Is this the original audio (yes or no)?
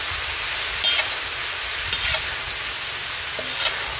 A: yes